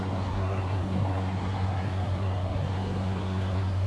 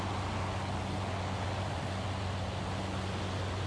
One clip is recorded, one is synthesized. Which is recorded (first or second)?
second